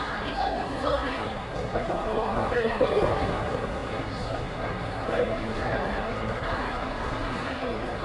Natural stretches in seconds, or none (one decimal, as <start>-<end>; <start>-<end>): none